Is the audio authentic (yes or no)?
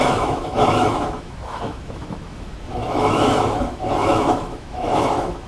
no